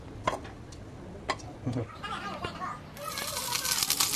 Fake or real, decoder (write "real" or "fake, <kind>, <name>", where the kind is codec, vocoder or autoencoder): real